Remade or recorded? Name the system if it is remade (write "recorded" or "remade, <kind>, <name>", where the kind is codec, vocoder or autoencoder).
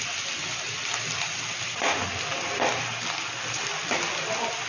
recorded